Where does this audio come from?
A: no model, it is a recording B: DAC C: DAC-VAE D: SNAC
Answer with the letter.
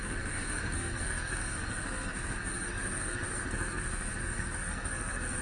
D